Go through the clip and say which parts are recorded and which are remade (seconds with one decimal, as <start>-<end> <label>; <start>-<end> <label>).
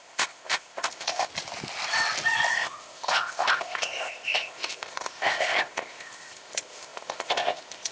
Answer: 0.0-1.3 remade; 1.3-2.5 recorded; 2.5-7.9 remade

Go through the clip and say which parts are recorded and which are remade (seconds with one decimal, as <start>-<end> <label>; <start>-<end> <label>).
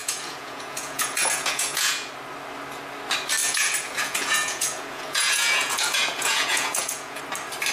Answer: 0.0-2.1 remade; 2.1-3.4 recorded; 3.4-7.2 remade; 7.2-7.7 recorded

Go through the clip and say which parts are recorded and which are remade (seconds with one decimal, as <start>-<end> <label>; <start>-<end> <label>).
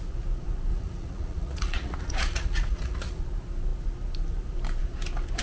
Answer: 0.0-0.7 recorded; 0.7-3.2 remade; 3.2-5.4 recorded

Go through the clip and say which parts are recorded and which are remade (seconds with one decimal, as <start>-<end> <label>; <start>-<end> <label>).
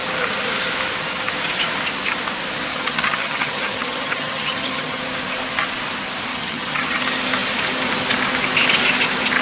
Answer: 0.0-2.7 recorded; 2.7-5.0 remade; 5.0-6.3 recorded; 6.3-7.0 remade; 7.0-9.4 recorded